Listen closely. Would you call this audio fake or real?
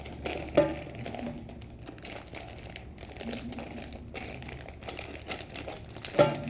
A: real